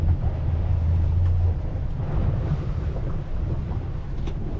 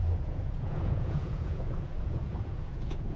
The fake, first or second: second